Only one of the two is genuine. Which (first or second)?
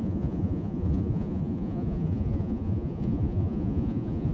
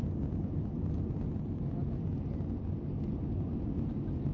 second